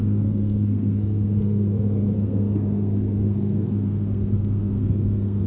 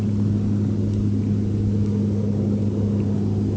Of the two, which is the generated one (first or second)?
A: first